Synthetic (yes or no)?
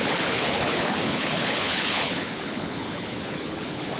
yes